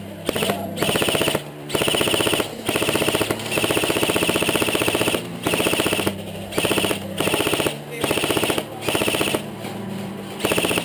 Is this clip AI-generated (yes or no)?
no